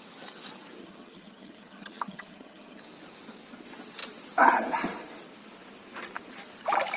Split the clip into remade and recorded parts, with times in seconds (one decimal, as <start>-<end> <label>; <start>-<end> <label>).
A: 0.0-0.8 recorded; 0.8-2.8 remade; 2.8-7.0 recorded